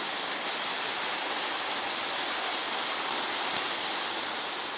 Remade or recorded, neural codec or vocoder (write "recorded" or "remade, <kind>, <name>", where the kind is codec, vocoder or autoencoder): recorded